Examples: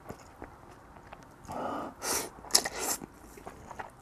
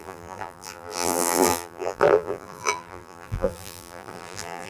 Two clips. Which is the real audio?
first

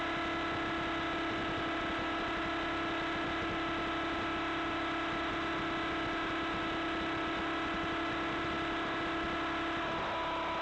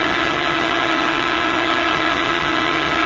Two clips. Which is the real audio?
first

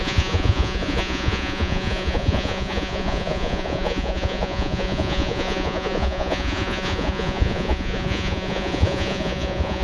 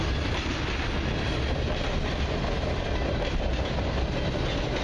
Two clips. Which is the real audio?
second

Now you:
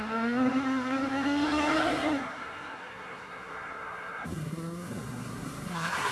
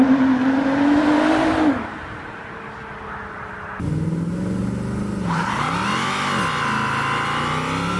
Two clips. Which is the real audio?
second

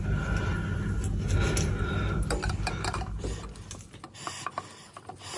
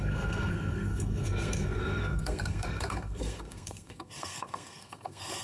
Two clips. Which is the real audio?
first